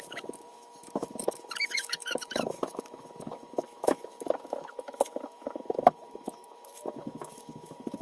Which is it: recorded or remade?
remade